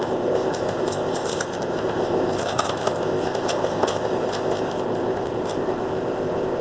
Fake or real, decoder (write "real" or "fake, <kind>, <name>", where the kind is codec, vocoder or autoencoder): fake, codec, ZipCodec